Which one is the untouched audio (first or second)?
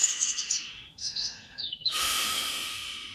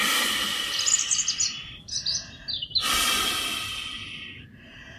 second